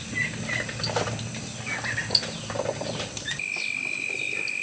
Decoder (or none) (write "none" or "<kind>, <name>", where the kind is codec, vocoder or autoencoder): none